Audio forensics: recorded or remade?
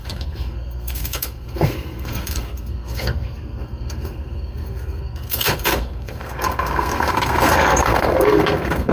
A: remade